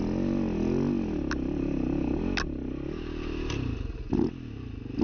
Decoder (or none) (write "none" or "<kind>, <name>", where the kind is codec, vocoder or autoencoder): none